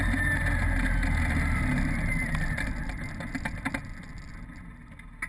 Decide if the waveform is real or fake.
real